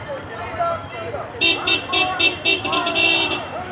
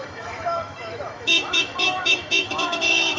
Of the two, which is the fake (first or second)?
second